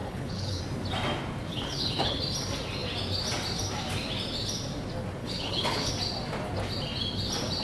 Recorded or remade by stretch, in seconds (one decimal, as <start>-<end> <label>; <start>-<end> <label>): 0.0-0.6 remade; 0.6-1.5 recorded; 1.5-2.2 remade; 2.2-5.2 recorded; 5.2-5.9 remade; 5.9-7.6 recorded